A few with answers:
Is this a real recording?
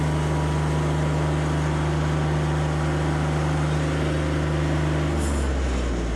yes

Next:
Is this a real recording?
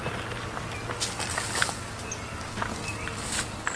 yes